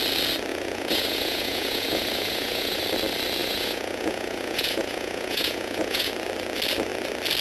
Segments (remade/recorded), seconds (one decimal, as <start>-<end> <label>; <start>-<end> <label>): 0.0-0.5 recorded; 0.5-2.8 remade; 2.8-3.4 recorded; 3.4-6.1 remade; 6.1-7.4 recorded